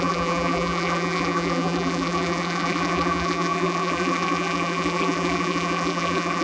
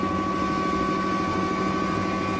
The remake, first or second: first